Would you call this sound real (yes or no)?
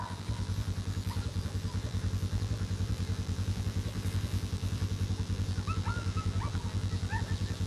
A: no